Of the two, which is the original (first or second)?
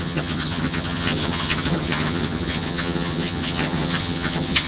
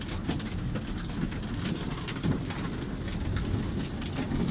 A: second